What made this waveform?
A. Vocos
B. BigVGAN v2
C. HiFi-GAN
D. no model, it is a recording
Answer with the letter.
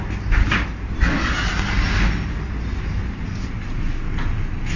D